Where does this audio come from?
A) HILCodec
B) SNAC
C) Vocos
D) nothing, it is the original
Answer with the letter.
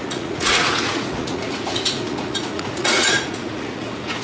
C